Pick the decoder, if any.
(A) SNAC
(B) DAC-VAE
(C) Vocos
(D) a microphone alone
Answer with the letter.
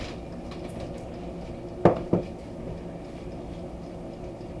D